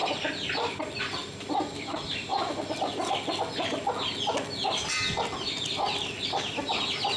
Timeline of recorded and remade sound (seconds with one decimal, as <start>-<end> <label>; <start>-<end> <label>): 0.0-1.6 remade; 1.6-2.3 recorded; 2.3-3.3 remade; 3.3-7.2 recorded